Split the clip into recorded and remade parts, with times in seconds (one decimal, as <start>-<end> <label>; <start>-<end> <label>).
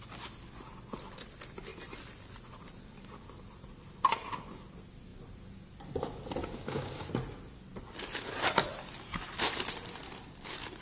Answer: 0.0-6.4 recorded; 6.4-7.1 remade; 7.1-10.8 recorded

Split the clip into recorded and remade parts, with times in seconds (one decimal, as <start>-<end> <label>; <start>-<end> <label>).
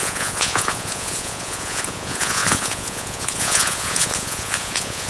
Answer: 0.0-5.1 remade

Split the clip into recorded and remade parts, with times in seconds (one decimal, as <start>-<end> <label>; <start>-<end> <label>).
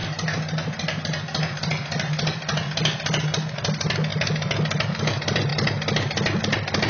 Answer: 0.0-6.9 recorded